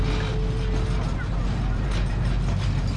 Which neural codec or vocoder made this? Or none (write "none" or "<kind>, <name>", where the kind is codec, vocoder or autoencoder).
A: none